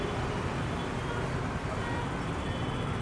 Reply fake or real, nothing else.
real